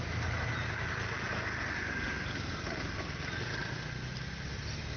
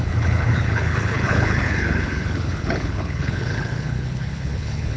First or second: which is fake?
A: second